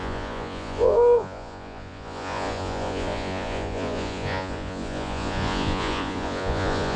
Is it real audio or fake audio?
fake